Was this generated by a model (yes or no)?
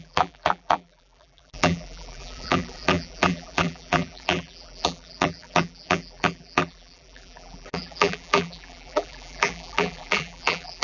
yes